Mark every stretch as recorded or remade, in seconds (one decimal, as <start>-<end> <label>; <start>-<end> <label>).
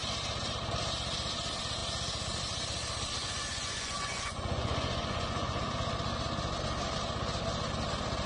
0.0-3.2 recorded; 3.2-5.6 remade; 5.6-8.3 recorded